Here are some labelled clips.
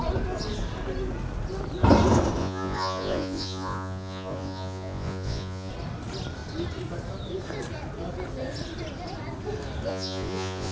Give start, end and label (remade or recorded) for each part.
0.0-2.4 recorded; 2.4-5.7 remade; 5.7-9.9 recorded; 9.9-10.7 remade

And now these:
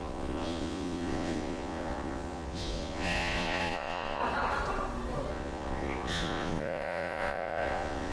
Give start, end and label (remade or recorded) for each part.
0.0-4.2 remade; 4.2-5.3 recorded; 5.3-8.1 remade

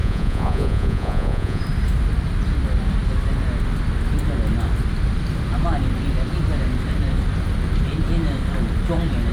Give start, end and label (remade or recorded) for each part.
0.0-1.6 remade; 1.6-9.3 recorded